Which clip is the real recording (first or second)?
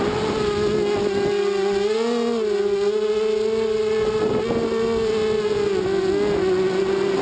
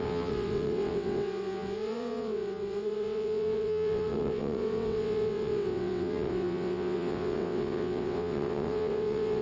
first